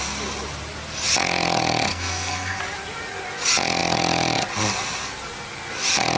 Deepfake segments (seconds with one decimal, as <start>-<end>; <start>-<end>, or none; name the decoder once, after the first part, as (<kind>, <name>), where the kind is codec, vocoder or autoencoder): 1.9-2.6 (codec, SNAC)